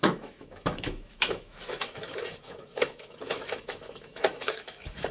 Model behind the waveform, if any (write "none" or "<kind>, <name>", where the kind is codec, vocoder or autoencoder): autoencoder, DAC-VAE